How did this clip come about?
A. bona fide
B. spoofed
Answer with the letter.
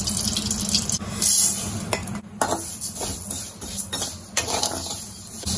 A